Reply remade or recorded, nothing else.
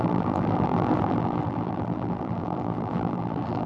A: remade